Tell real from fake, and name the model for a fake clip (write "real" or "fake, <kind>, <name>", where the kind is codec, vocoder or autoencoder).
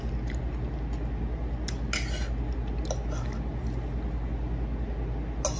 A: real